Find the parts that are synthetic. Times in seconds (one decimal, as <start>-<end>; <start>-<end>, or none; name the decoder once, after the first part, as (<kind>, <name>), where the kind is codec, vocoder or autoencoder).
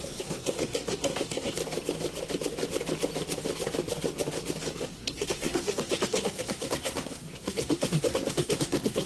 0.0-1.6 (codec, SNAC); 4.8-9.1